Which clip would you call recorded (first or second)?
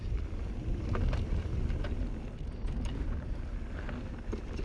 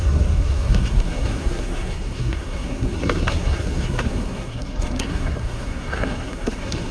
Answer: first